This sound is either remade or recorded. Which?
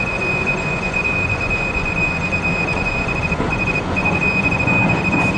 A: remade